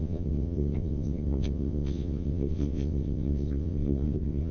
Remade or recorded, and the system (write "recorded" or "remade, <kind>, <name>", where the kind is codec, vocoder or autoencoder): remade, vocoder, WaveNeXt